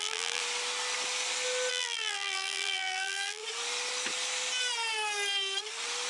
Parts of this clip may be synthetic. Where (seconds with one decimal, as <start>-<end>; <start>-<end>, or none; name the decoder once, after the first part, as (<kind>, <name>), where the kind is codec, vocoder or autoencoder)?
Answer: 0.0-0.4 (vocoder, BigVGAN v2); 1.7-3.4